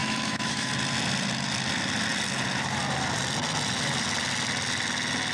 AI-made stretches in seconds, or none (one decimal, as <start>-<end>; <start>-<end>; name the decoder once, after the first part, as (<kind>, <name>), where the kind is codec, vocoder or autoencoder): 0.0-0.7 (autoencoder, DAC-VAE)